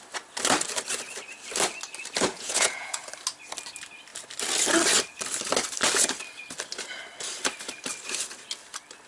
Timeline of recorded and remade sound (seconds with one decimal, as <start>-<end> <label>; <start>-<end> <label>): 0.0-2.3 recorded; 2.3-3.0 remade; 3.0-9.1 recorded